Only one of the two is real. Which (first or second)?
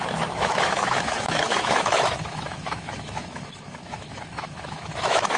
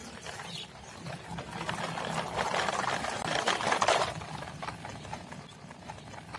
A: second